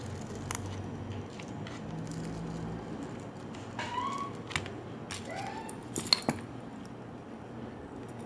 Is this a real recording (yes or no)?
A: yes